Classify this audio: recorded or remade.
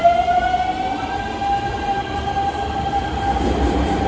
recorded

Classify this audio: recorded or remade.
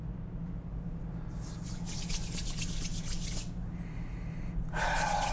recorded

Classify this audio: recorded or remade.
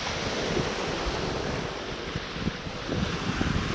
recorded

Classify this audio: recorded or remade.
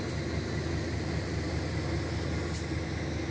recorded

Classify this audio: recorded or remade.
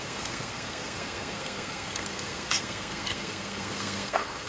remade